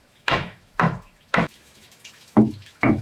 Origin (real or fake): fake